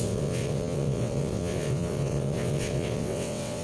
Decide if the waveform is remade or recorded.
remade